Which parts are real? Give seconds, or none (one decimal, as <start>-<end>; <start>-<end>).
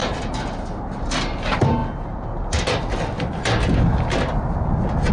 0.0-5.1